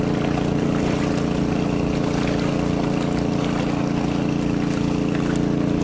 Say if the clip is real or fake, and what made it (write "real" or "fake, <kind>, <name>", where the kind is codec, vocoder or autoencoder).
real